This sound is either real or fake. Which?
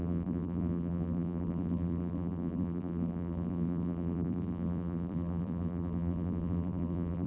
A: fake